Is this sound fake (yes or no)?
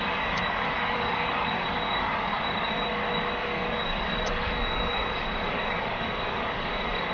yes